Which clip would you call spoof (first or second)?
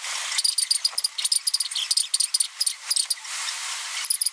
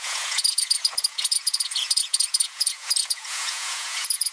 second